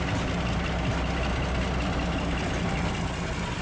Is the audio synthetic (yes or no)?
no